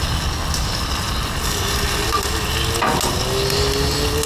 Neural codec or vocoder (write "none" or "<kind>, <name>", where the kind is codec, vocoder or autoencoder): none